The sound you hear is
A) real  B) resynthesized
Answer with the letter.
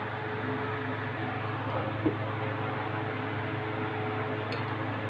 A